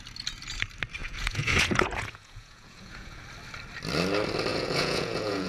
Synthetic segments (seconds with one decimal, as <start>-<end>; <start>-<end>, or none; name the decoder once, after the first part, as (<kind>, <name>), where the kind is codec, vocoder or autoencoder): 1.0-3.2 (vocoder, Vocos); 4.5-5.5